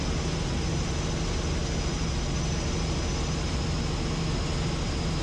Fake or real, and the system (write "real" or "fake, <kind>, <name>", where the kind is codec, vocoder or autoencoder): real